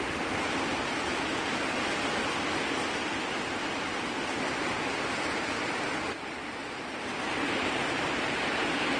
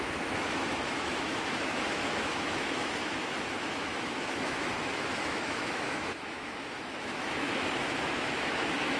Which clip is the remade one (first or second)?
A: second